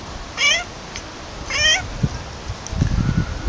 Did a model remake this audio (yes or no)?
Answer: no